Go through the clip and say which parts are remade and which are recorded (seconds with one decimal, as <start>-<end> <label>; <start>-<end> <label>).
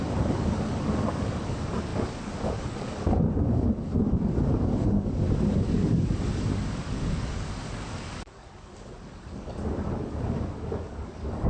0.0-11.5 remade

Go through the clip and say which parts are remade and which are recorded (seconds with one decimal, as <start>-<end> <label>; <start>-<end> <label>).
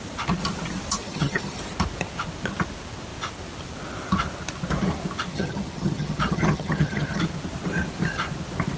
0.0-1.0 recorded; 1.0-1.6 remade; 1.6-5.3 recorded; 5.3-7.2 remade; 7.2-8.8 recorded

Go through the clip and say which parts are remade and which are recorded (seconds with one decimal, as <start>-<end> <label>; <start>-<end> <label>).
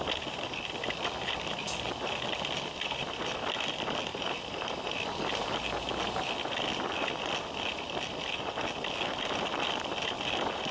0.0-4.1 recorded; 4.1-4.7 remade; 4.7-10.7 recorded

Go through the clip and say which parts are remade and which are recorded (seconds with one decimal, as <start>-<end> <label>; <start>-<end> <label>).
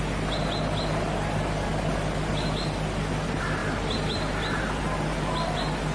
0.0-5.9 recorded